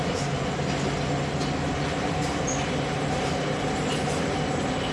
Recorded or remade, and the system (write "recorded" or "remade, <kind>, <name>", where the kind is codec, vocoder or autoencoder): recorded